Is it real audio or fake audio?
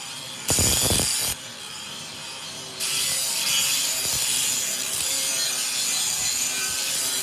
fake